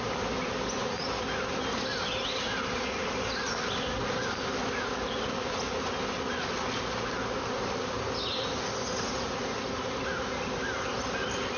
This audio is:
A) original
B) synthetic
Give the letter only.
A